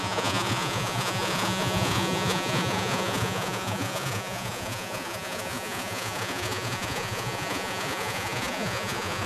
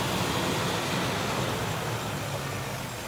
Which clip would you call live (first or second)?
second